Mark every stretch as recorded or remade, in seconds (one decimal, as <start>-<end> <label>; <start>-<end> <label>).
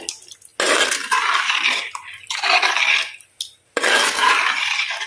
0.0-5.1 recorded